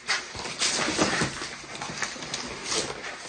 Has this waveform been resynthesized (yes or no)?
no